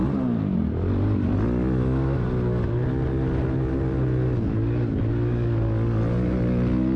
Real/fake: real